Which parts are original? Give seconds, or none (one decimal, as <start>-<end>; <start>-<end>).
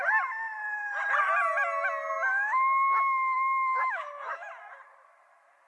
0.0-2.3; 4.5-5.7